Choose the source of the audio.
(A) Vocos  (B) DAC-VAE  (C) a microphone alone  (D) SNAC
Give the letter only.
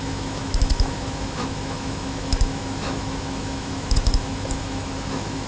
B